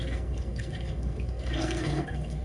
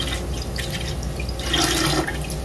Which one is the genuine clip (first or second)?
second